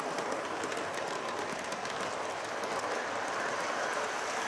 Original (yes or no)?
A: yes